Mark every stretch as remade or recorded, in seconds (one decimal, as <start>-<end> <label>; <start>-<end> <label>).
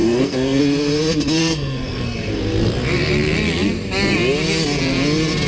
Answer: 0.0-0.6 remade; 0.6-1.4 recorded; 1.4-2.4 remade; 2.4-5.5 recorded